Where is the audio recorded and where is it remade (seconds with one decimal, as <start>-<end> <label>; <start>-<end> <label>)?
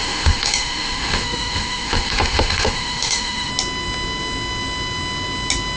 0.0-3.5 remade; 3.5-5.8 recorded